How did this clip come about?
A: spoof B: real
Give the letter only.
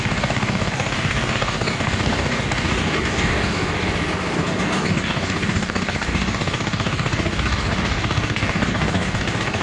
A